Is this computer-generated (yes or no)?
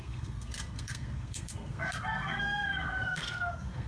yes